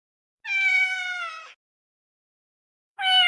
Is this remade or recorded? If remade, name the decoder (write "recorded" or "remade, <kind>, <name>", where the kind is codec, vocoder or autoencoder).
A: recorded